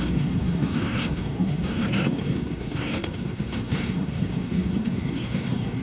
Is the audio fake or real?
fake